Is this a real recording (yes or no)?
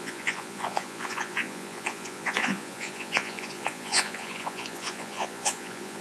no